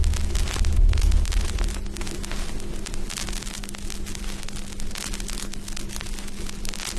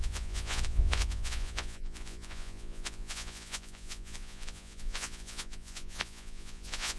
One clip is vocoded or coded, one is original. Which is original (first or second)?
first